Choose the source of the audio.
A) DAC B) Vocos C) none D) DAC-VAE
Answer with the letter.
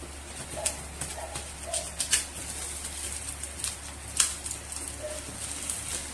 C